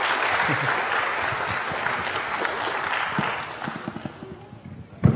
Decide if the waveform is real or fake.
real